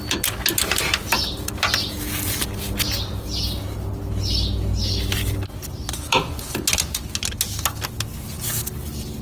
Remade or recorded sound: recorded